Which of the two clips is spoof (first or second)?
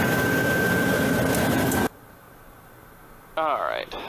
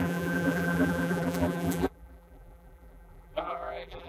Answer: second